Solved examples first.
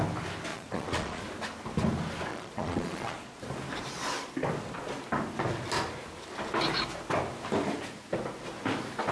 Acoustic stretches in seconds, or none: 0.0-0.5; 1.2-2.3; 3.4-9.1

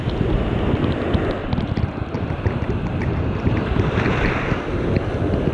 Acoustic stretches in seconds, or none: 0.0-1.4; 4.7-5.5

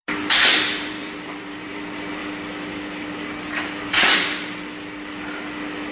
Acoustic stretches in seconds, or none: 0.0-0.5; 1.7-5.9

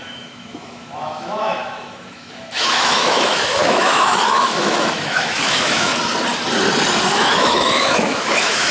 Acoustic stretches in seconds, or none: 5.9-7.1